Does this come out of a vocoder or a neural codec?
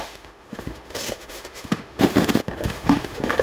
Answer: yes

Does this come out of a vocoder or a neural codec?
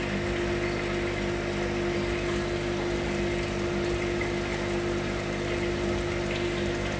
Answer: no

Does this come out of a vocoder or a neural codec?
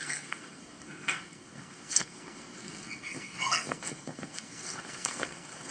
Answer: yes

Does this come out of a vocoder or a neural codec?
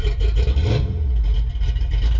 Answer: no